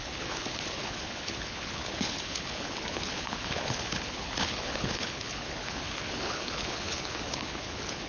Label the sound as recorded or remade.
remade